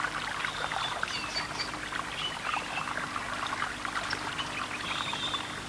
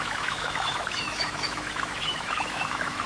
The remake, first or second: second